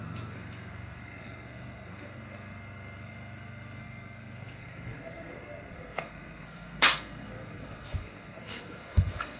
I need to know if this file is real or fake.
fake